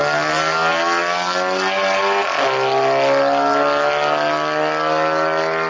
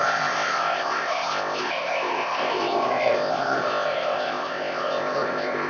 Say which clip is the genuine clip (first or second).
first